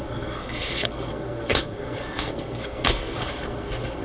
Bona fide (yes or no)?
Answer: no